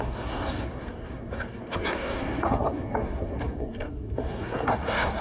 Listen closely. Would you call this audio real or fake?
fake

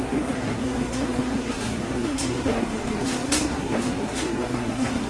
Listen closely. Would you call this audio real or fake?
fake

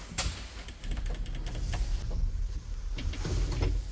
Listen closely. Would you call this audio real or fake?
real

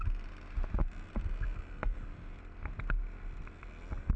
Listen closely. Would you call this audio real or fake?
real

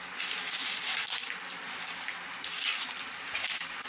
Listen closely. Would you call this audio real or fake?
real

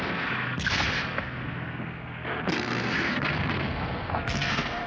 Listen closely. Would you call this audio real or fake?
fake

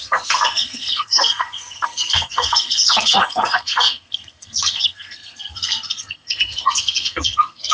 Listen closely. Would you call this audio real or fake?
fake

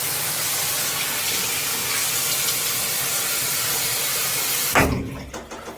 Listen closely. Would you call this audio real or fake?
real